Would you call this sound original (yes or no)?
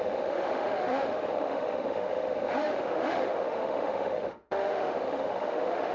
no